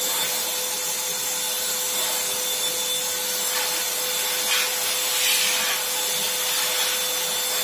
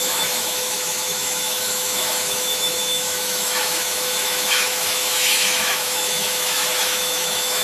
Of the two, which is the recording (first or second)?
first